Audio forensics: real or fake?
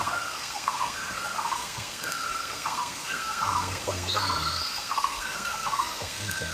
fake